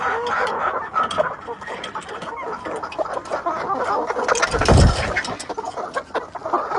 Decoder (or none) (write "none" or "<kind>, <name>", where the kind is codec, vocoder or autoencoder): none